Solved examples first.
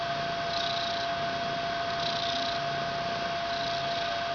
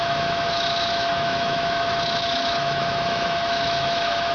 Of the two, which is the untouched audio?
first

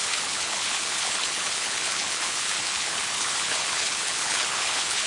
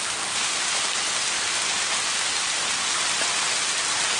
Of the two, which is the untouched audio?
second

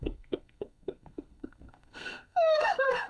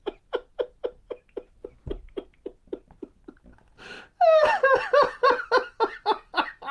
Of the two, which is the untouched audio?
second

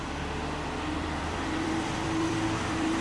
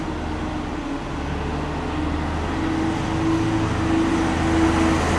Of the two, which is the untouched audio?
second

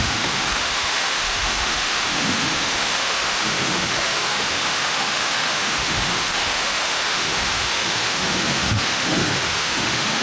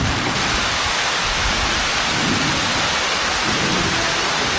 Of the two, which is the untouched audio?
second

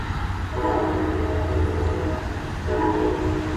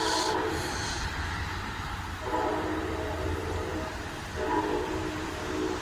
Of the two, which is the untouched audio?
first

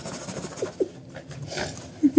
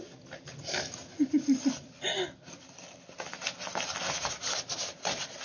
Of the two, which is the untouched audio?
second